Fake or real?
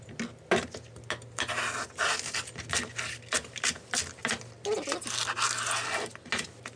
real